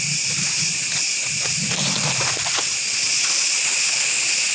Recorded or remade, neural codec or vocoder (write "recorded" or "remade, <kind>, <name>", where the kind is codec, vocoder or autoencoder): remade, vocoder, BigVGAN v2